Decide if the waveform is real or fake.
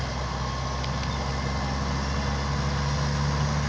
real